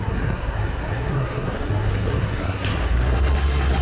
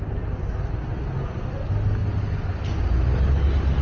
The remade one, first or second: first